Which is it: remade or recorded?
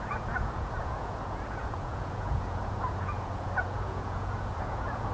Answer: remade